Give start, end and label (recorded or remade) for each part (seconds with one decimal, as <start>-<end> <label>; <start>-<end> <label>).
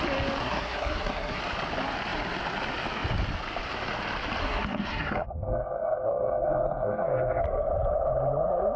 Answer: 0.0-0.4 recorded; 0.4-1.4 remade; 1.4-4.4 recorded; 4.4-7.4 remade; 7.4-8.8 recorded